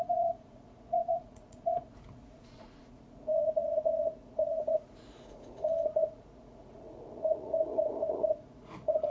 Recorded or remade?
remade